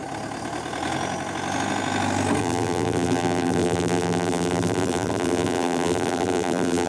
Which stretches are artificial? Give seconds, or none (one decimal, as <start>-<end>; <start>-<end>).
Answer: 2.4-6.9

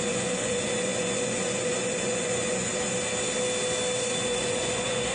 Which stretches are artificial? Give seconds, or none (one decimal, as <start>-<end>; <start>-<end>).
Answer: 0.0-2.7; 4.0-5.1

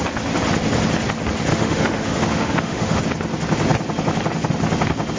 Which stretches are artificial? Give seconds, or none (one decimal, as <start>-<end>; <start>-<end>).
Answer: 1.5-3.0